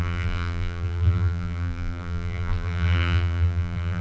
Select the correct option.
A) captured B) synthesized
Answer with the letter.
B